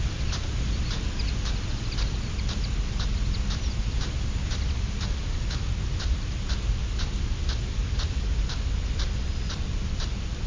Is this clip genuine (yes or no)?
yes